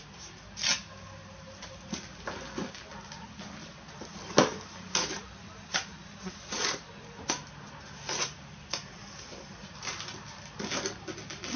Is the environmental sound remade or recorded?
recorded